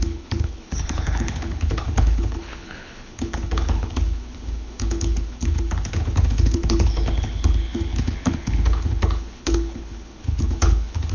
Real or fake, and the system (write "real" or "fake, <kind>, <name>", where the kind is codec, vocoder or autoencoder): fake, codec, HILCodec